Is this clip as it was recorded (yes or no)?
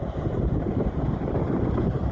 no